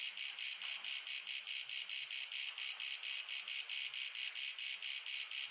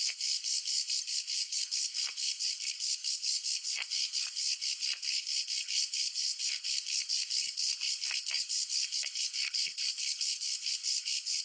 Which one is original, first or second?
first